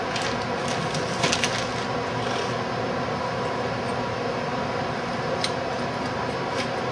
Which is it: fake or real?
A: real